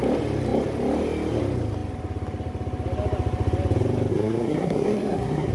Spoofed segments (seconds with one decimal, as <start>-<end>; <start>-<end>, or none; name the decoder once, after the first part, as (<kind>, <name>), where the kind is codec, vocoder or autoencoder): 4.1-5.5 (codec, SNAC)